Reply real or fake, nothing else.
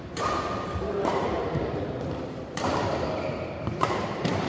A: fake